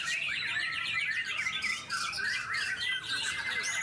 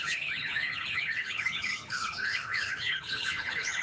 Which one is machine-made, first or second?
second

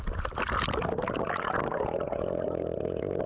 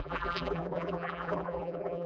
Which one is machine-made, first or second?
second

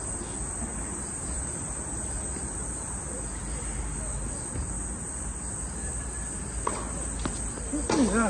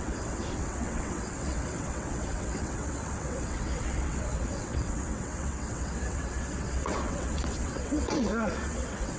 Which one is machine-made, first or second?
second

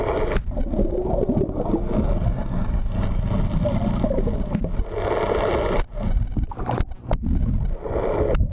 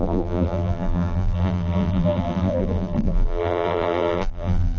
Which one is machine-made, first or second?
second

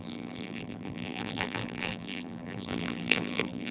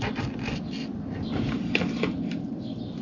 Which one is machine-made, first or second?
first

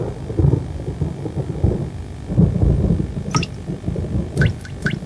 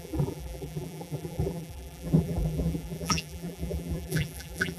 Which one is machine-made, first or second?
second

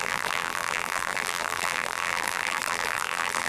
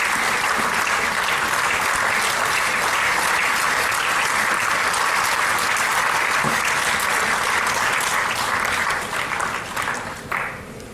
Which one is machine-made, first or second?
first